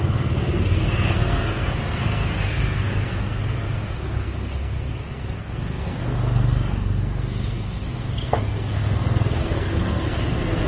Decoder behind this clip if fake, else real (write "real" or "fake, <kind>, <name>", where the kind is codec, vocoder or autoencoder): fake, codec, SNAC